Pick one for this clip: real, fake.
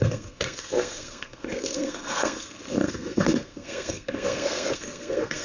fake